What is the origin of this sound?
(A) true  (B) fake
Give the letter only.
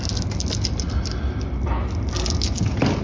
A